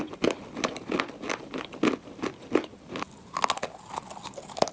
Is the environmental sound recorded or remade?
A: recorded